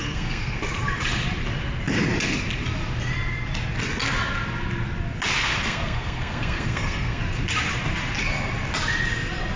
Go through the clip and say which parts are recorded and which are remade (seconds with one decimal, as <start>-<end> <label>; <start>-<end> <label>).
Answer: 0.0-0.6 remade; 0.6-5.4 recorded; 5.4-7.2 remade; 7.2-9.6 recorded